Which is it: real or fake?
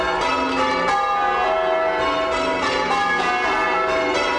real